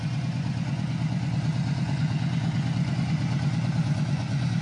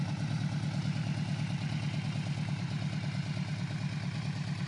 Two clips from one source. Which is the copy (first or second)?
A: first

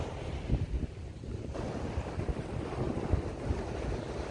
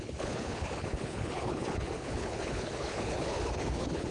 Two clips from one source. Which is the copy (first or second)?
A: second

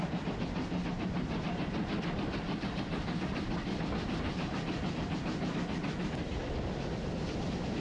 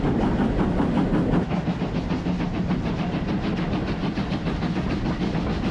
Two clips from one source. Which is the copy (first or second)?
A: first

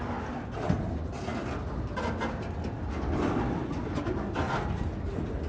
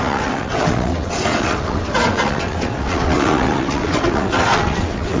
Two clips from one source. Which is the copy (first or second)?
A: second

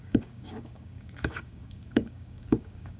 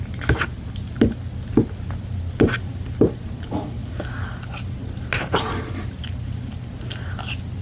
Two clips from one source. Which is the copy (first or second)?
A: first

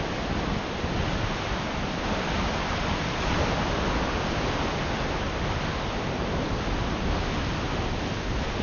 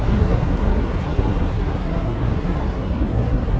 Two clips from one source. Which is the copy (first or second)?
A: second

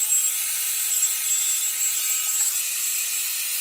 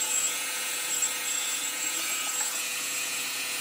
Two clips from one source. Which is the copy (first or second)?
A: second